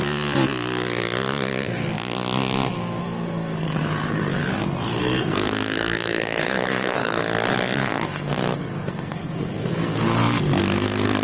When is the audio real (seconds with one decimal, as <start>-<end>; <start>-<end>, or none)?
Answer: 0.0-3.0; 4.4-5.0; 7.2-7.8